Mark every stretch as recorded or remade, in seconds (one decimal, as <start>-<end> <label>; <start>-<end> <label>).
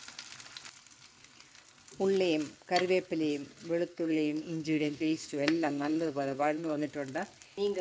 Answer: 0.0-3.9 recorded; 3.9-6.9 remade; 6.9-7.8 recorded